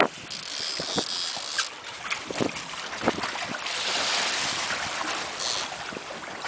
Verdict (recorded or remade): recorded